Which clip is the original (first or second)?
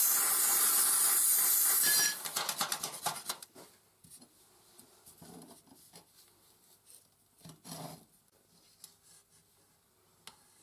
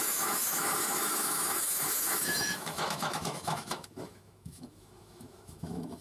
first